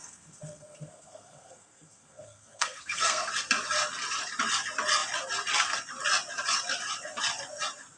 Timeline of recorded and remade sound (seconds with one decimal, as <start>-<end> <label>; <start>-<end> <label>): 0.0-3.3 remade; 3.3-8.0 recorded